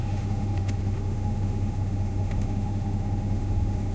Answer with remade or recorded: remade